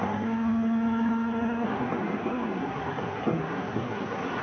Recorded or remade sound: remade